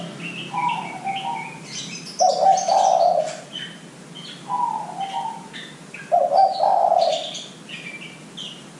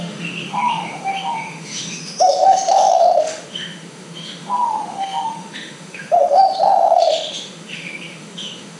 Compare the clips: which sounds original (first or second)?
first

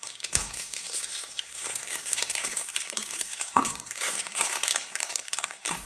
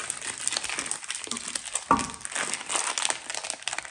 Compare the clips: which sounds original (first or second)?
second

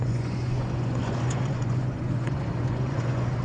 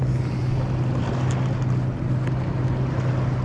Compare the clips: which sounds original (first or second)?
second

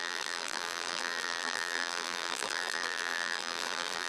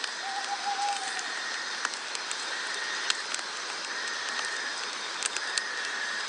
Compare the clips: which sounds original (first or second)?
second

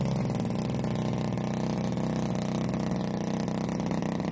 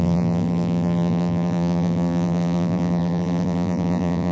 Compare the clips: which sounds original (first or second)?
first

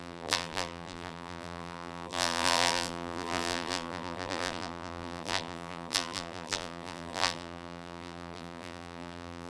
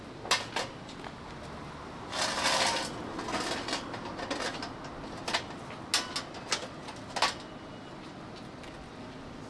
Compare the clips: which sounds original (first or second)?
second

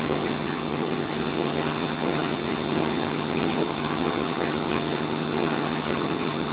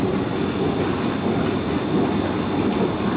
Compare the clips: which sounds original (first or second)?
second